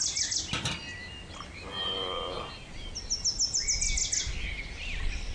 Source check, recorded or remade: recorded